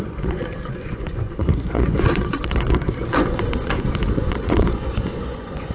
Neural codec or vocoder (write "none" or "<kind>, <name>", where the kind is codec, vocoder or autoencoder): vocoder, Vocos